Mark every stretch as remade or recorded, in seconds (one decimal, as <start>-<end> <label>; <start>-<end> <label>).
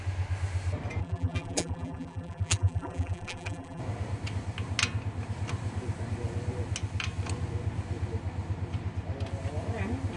0.0-1.0 recorded; 1.0-3.8 remade; 3.8-10.2 recorded